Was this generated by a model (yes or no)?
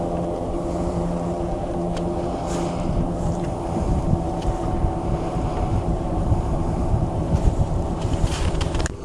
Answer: yes